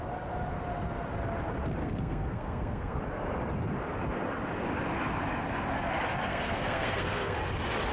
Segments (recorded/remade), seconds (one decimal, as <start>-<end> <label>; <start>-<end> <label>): 0.0-1.8 recorded; 1.8-3.0 remade; 3.0-6.3 recorded; 6.3-7.4 remade; 7.4-7.9 recorded